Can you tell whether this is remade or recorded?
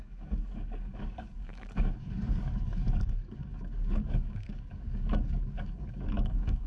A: remade